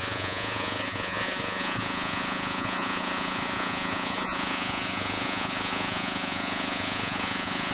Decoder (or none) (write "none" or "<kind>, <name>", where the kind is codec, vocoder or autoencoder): vocoder, Vocos